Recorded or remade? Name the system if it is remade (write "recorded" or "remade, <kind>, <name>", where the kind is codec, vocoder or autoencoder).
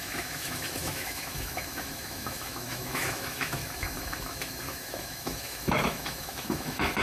remade, autoencoder, DAC-VAE